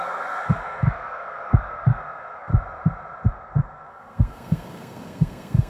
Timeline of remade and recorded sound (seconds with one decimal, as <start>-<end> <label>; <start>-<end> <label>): 0.0-2.5 remade; 2.5-3.3 recorded; 3.3-5.7 remade